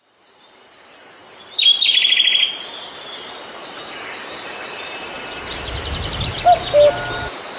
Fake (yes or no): no